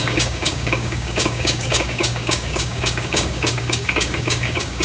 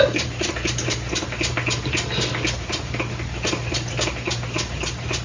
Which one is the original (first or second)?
second